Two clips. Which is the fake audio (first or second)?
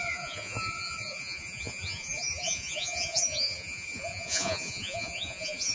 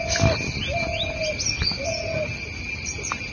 first